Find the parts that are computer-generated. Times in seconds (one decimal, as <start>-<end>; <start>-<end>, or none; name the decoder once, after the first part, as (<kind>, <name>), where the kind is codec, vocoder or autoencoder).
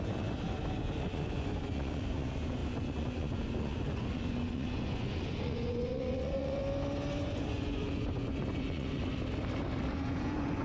0.0-6.6 (vocoder, Vocos); 7.2-9.0; 9.9-10.6